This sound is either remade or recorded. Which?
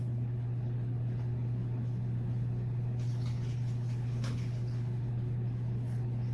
remade